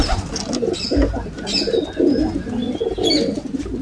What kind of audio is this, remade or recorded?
recorded